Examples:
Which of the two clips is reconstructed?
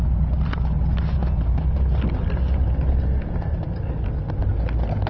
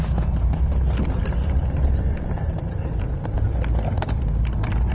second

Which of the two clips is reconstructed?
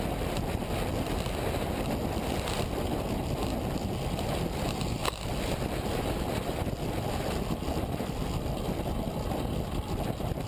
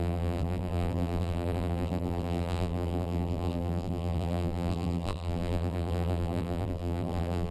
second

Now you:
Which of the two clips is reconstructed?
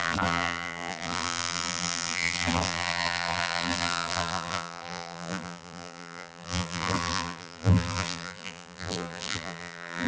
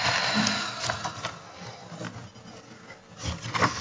first